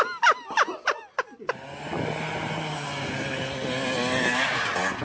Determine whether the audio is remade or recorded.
recorded